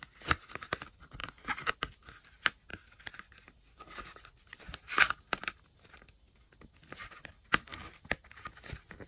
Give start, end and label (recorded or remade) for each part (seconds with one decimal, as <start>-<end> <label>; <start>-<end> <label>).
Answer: 0.0-9.1 recorded